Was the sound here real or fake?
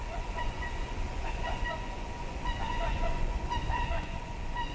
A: fake